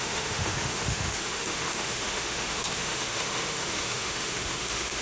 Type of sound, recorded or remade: remade